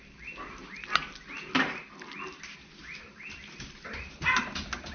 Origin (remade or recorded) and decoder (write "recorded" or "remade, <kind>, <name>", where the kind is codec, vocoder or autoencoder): recorded